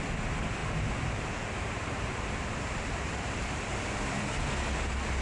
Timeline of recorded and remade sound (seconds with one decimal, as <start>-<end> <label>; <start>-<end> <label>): 0.0-0.6 recorded; 0.6-3.7 remade; 3.7-5.2 recorded